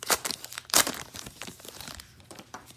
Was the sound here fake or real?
fake